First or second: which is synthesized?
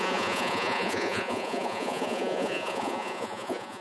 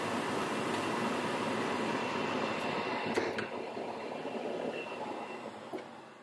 first